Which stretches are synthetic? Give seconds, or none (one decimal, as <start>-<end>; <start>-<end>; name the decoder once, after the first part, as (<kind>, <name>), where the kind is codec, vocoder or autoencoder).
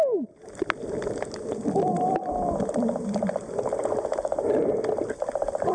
none